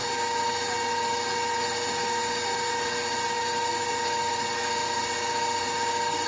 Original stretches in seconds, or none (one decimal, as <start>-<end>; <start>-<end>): 0.0-6.3